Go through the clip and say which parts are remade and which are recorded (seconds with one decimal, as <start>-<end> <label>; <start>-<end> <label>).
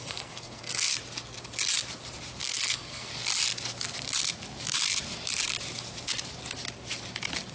0.0-0.9 remade; 0.9-2.4 recorded; 2.4-3.1 remade; 3.1-7.5 recorded